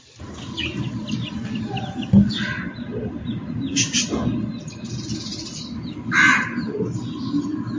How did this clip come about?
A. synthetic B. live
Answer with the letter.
B